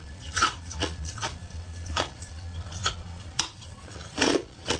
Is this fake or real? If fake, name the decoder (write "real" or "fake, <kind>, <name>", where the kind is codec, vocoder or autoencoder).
fake, vocoder, Vocos